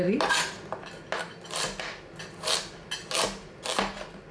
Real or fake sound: real